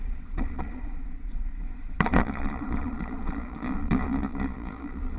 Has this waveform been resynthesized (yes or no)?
yes